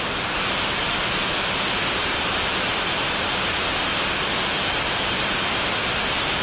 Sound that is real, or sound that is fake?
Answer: real